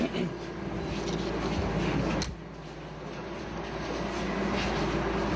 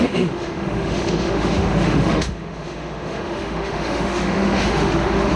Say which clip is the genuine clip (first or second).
first